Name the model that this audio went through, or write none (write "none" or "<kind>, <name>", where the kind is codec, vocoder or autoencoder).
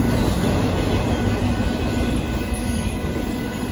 none